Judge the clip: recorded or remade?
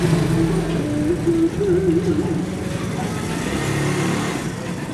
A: recorded